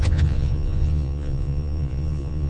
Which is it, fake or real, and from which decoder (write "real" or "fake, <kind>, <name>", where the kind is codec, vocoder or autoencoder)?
fake, vocoder, Vocos